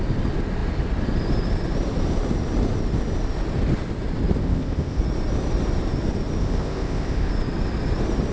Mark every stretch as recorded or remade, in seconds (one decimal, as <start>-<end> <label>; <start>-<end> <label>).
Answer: 0.0-4.4 recorded; 4.4-5.0 remade; 5.0-6.4 recorded; 6.4-7.3 remade; 7.3-8.3 recorded